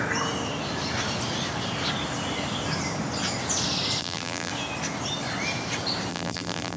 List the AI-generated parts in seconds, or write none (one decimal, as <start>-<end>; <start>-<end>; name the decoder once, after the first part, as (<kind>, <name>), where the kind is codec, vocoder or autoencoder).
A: 4.0-4.5 (vocoder, BigVGAN v2); 6.1-6.8